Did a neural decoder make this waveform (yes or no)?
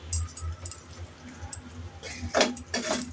no